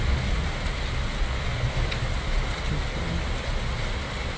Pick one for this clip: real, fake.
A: real